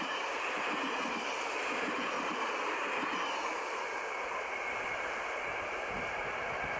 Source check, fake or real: real